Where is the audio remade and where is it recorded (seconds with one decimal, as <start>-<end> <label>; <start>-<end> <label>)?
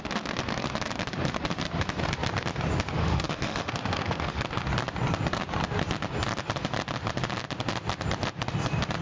0.0-3.0 recorded; 3.0-4.4 remade; 4.4-9.0 recorded